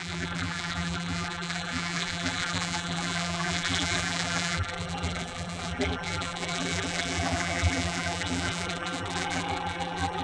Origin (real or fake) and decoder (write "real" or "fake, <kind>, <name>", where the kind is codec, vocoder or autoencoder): fake, vocoder, BigVGAN v2